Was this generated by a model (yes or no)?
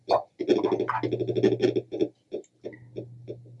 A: no